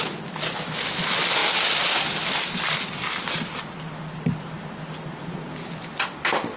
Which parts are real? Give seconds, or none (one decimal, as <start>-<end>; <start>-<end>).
0.0-6.6